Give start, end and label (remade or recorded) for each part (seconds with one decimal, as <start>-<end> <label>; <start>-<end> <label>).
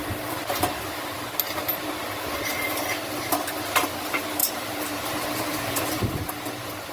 0.0-4.4 recorded; 4.4-6.3 remade; 6.3-6.9 recorded